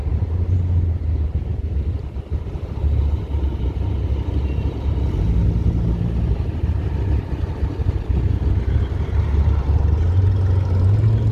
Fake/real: real